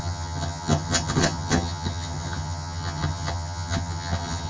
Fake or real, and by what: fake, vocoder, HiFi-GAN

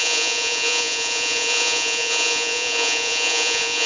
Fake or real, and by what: fake, vocoder, Vocos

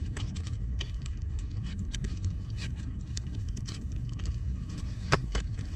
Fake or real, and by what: fake, codec, SNAC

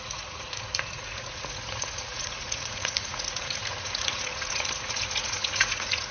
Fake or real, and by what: fake, vocoder, Vocos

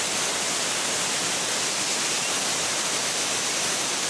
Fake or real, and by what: real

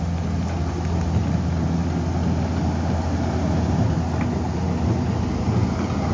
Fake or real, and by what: real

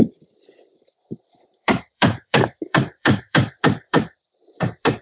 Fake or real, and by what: fake, vocoder, BigVGAN v2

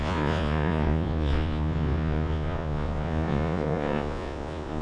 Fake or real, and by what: fake, vocoder, Vocos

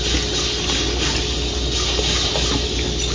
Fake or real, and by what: real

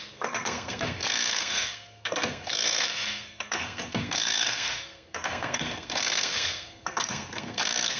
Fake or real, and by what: fake, codec, SNAC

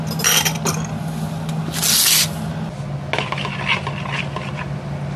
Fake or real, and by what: real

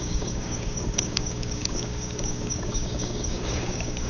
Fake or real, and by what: fake, codec, DAC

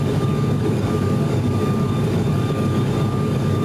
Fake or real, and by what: fake, codec, DAC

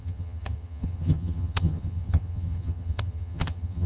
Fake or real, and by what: fake, vocoder, HiFi-GAN